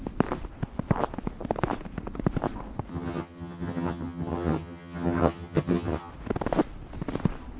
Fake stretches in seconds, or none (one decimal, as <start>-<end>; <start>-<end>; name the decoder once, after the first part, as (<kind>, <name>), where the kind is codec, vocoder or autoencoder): 2.9-6.1 (vocoder, HiFi-GAN)